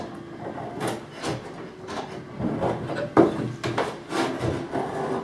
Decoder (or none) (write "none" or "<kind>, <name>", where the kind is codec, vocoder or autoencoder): none